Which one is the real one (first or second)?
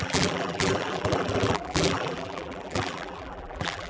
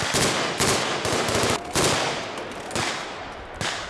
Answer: second